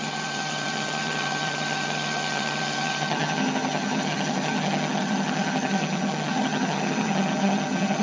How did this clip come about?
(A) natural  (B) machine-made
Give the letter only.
B